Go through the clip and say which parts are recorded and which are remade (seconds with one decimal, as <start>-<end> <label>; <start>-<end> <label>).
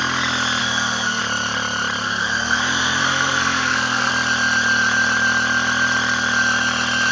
0.0-0.6 recorded; 0.6-1.2 remade; 1.2-2.0 recorded; 2.0-4.1 remade; 4.1-7.1 recorded